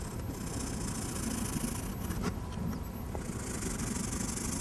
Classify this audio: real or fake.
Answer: real